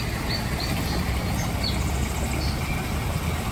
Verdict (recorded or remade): recorded